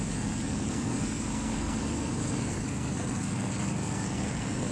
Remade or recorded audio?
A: remade